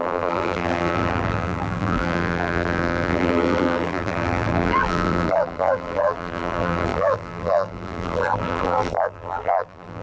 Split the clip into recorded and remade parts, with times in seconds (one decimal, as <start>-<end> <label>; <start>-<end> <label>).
0.0-10.0 remade